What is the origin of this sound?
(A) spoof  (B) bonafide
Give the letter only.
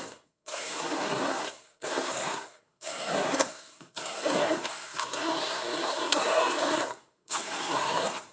A